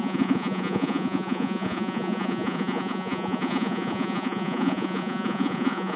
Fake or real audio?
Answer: fake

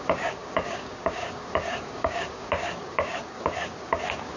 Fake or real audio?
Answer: fake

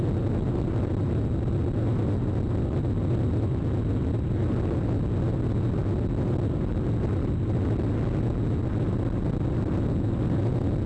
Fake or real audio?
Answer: real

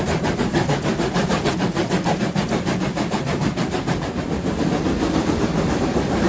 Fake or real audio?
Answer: fake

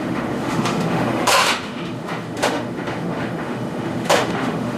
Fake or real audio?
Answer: fake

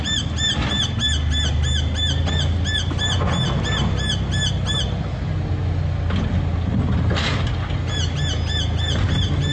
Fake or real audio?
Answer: real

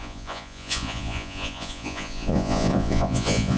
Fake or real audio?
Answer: fake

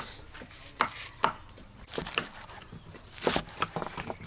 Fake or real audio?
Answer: real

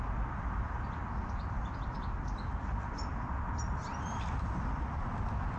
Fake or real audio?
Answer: real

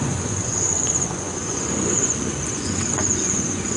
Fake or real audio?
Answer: fake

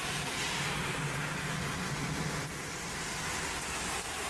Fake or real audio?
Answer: real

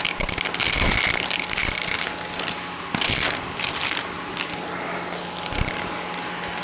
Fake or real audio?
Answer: real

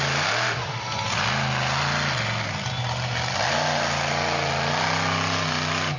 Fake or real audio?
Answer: real